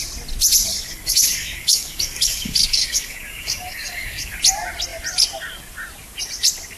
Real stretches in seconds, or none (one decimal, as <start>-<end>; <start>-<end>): 0.0-0.7; 4.4-6.8